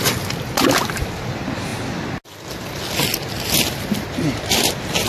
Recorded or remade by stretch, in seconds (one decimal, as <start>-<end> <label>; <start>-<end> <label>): 0.0-5.1 recorded